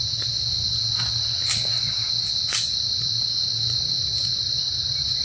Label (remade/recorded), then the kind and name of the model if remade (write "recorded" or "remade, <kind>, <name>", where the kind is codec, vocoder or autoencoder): recorded